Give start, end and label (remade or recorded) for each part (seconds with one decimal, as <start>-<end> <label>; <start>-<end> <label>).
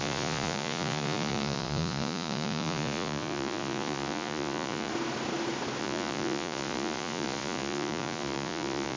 0.0-4.9 remade; 4.9-5.8 recorded; 5.8-9.0 remade